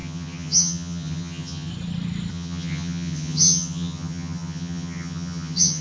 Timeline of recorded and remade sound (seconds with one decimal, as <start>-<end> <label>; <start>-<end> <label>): 0.0-1.7 remade; 1.7-2.3 recorded; 2.3-5.8 remade